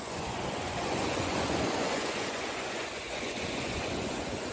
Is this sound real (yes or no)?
no